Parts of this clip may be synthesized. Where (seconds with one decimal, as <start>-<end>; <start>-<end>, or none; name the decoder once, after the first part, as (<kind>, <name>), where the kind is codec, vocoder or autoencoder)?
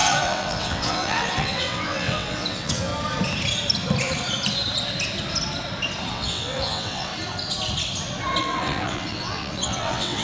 0.0-2.9 (vocoder, WaveNeXt); 6.1-7.1; 8.4-10.2